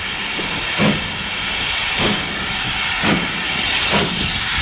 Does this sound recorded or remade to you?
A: recorded